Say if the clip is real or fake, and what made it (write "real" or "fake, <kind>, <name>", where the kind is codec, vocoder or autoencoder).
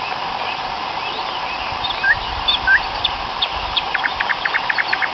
real